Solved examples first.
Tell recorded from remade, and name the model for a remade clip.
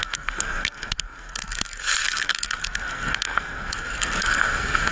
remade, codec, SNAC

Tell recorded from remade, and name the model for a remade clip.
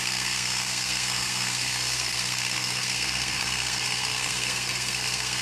remade, codec, SNAC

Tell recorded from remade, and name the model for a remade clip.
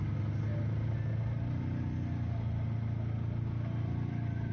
recorded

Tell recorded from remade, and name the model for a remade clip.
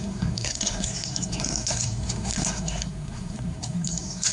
remade, codec, SNAC